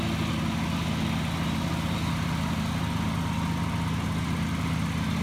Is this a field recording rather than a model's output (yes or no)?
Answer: yes